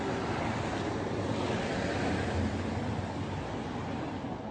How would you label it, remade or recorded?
recorded